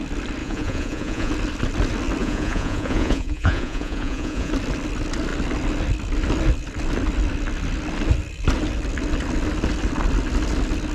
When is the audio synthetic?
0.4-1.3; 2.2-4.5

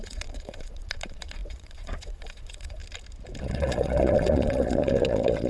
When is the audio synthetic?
0.0-2.8; 3.4-5.5

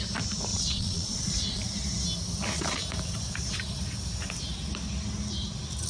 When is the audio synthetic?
0.5-1.6